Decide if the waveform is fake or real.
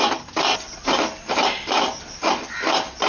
real